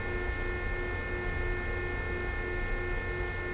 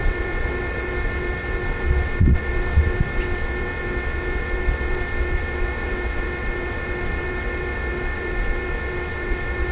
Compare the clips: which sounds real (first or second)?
first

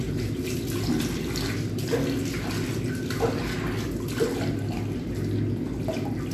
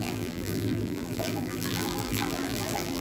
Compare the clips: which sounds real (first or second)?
first